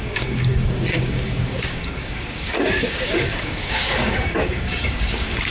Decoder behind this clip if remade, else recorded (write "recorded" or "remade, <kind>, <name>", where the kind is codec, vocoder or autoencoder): remade, codec, DAC